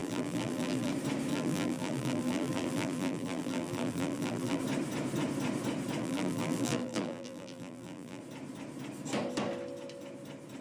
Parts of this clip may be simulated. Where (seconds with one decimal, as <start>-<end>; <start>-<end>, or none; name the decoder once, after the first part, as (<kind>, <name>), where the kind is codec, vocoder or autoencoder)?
0.0-0.9 (vocoder, BigVGAN v2); 1.3-4.6; 6.0-8.2